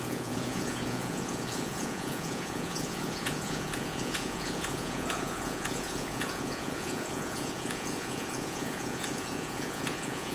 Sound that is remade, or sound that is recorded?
remade